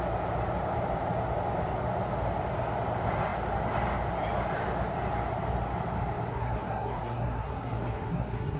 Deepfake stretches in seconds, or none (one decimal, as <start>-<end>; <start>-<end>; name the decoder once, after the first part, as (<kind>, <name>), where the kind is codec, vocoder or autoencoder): 6.3-8.6 (codec, SNAC)

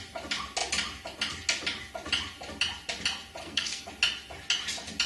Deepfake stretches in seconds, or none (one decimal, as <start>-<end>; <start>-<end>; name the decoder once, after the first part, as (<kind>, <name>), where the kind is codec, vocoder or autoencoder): 3.4-3.9 (codec, SNAC)

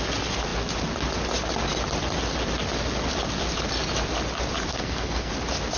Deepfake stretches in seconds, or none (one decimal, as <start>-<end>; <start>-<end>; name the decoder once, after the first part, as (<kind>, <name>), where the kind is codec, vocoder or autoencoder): 4.7-5.3 (codec, SNAC)

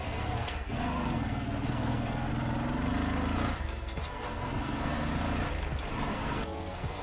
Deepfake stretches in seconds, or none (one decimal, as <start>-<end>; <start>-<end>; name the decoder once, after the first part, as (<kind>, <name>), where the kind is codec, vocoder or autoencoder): 0.0-2.3 (codec, SNAC); 3.6-5.1; 6.1-7.0

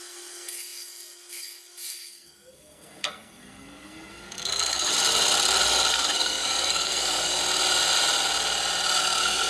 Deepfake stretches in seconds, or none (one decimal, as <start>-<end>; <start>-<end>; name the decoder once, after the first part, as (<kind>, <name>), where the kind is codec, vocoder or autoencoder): 0.0-4.9 (codec, SNAC); 5.9-7.4; 9.0-9.5